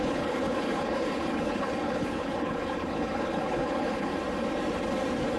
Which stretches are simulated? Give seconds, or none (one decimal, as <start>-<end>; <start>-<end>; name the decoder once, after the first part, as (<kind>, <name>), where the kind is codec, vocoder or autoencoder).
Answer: 0.0-4.1 (codec, HILCodec)